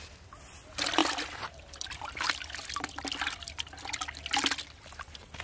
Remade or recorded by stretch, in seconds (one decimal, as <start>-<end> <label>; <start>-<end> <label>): 0.0-5.4 recorded